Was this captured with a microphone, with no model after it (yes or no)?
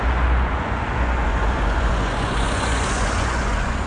no